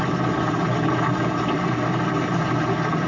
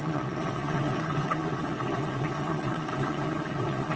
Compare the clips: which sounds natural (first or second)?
first